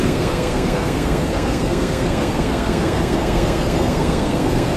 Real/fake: fake